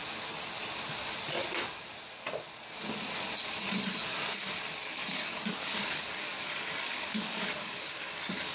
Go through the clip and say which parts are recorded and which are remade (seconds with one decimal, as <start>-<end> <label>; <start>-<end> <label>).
0.0-5.1 recorded; 5.1-8.5 remade